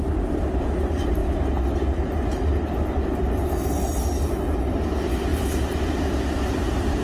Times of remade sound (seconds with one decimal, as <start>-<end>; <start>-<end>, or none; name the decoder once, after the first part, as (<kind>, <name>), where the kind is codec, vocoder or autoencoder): 0.0-1.2 (vocoder, BigVGAN v2); 1.8-3.2; 4.7-7.0